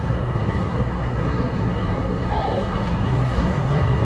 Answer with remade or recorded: remade